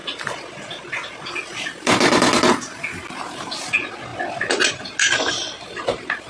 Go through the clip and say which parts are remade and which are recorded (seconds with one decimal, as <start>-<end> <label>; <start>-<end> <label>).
0.0-6.3 recorded